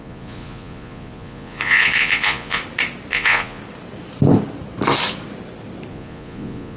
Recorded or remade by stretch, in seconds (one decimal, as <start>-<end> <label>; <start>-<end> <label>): 0.0-2.6 remade; 2.6-3.1 recorded; 3.1-3.6 remade; 3.6-5.9 recorded; 5.9-6.8 remade